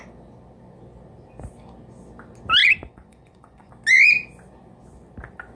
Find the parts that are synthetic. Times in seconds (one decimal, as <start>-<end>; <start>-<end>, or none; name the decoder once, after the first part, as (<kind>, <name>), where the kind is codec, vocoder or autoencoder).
2.6-3.7 (vocoder, Vocos)